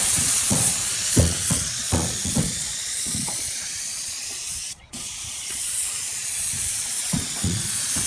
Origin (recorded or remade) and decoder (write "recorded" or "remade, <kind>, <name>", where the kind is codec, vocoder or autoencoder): remade, vocoder, Vocos